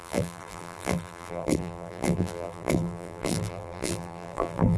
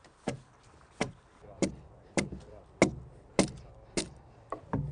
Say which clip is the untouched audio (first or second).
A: second